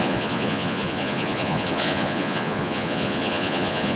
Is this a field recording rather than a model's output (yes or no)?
no